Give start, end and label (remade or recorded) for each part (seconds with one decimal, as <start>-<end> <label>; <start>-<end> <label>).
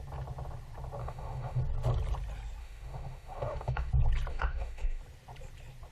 0.0-1.0 recorded; 1.0-1.6 remade; 1.6-2.6 recorded; 2.6-3.9 remade; 3.9-4.3 recorded; 4.3-5.0 remade; 5.0-5.9 recorded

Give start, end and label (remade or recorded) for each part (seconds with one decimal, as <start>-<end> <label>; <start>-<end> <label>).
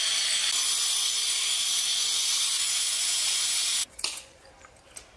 0.0-1.9 recorded; 1.9-4.5 remade; 4.5-5.2 recorded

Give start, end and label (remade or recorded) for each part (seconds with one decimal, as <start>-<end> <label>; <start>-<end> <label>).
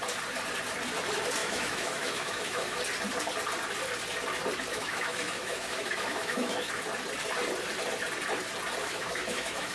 0.0-1.4 recorded; 1.4-2.8 remade; 2.8-4.7 recorded; 4.7-6.7 remade; 6.7-8.8 recorded; 8.8-9.7 remade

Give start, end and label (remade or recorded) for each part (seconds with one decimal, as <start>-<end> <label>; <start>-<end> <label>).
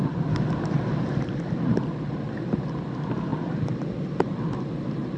0.0-5.2 recorded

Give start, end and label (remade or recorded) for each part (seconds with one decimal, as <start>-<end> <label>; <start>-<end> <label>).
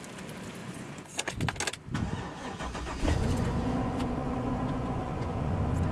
0.0-0.6 recorded; 0.6-1.4 remade; 1.4-2.4 recorded; 2.4-5.9 remade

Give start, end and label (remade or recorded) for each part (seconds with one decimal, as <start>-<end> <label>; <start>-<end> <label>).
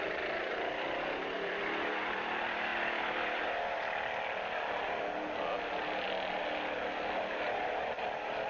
0.0-8.5 recorded